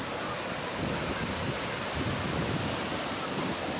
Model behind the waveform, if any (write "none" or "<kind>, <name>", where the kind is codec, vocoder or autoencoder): none